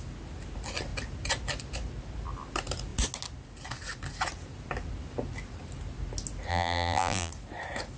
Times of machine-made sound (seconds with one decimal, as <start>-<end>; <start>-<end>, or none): 6.5-7.3